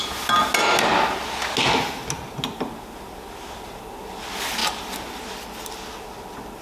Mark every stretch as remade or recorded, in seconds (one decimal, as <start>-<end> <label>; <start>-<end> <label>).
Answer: 0.0-6.6 recorded